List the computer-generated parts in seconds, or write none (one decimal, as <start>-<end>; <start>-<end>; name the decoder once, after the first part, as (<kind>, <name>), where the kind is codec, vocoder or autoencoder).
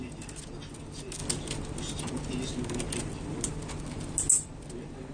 none